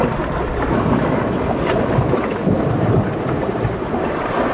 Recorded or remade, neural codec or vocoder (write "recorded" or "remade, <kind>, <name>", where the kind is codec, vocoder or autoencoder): recorded